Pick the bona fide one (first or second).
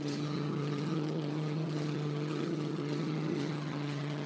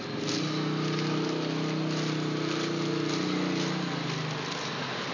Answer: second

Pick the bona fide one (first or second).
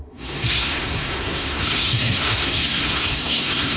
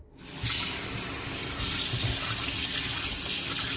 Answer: second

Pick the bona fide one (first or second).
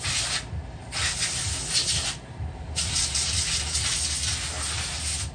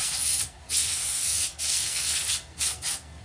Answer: first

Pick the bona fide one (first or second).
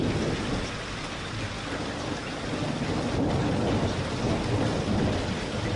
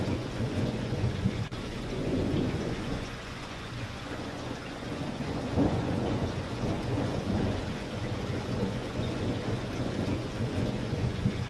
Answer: first